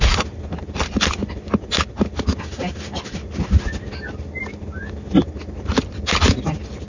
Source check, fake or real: real